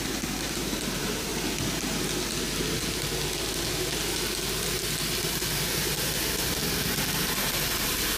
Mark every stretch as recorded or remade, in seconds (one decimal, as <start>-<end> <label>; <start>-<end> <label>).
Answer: 0.0-1.3 remade; 1.3-5.3 recorded; 5.3-6.6 remade; 6.6-7.2 recorded; 7.2-8.2 remade